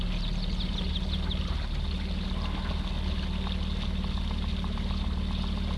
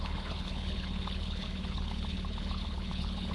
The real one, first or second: first